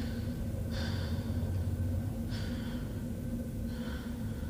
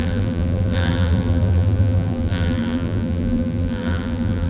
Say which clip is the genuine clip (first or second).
first